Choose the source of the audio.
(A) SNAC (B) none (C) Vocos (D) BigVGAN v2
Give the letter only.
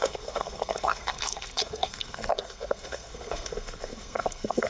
A